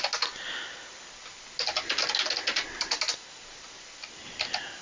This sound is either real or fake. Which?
real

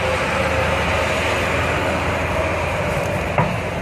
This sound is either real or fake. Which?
real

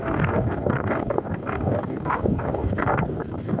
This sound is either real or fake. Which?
fake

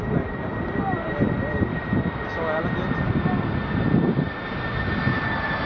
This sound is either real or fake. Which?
real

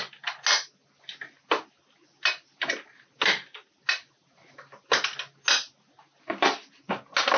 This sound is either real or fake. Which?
real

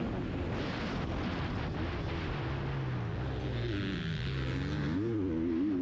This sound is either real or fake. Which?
real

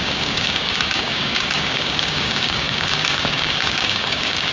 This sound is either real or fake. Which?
fake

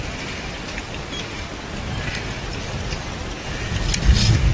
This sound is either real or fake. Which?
real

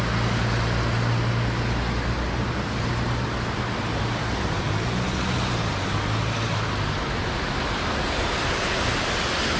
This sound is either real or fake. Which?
real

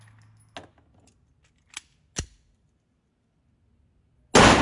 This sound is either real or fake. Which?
real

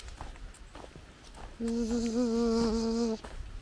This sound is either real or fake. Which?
real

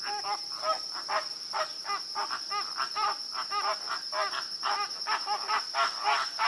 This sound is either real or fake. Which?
real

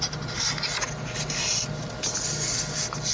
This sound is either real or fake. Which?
real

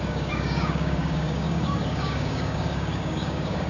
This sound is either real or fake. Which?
fake